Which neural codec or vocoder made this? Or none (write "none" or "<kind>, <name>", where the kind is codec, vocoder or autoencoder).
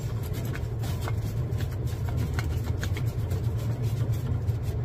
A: none